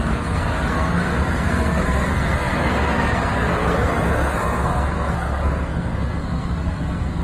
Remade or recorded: remade